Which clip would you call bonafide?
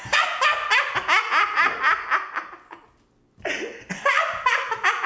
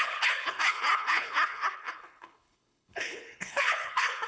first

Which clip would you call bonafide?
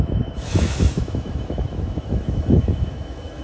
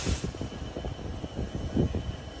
second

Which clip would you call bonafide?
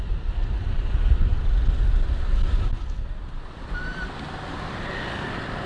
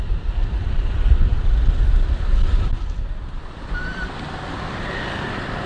first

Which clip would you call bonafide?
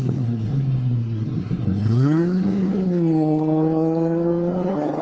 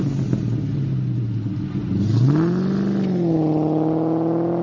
second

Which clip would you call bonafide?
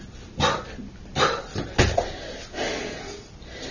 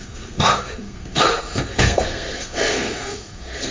first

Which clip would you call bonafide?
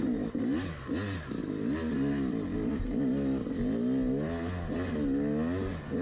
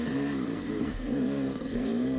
first